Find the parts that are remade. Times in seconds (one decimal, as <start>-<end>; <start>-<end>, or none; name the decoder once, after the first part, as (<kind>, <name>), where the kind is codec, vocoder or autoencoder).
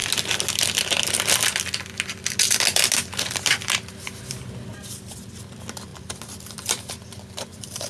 5.9-7.9 (vocoder, BigVGAN v2)